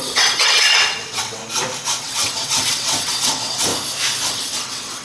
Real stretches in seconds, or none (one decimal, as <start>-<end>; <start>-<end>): 1.4-2.0; 3.7-4.3

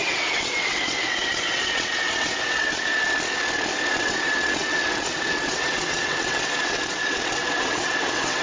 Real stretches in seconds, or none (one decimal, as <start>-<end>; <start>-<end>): 2.9-4.0